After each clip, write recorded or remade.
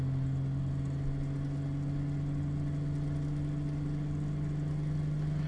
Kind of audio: recorded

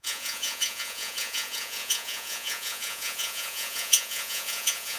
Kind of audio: remade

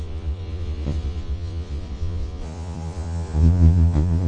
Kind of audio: remade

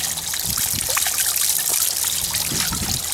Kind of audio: recorded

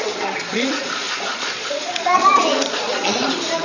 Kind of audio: remade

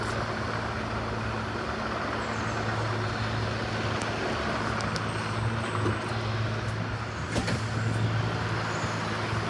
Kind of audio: recorded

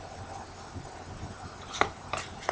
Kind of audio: recorded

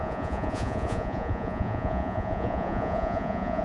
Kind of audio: remade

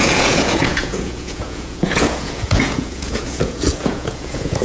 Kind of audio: remade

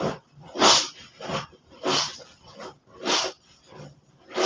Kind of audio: recorded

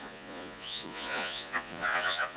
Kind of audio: remade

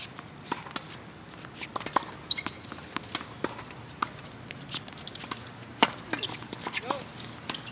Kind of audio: recorded